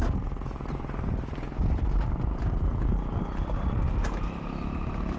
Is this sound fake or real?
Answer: real